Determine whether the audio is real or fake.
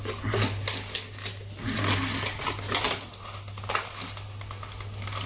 real